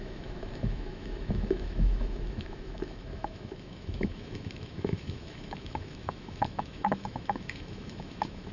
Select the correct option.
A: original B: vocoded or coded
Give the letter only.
B